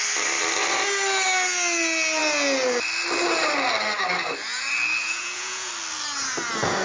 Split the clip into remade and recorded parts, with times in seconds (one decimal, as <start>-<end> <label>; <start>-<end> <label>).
0.0-5.0 recorded; 5.0-5.7 remade; 5.7-6.8 recorded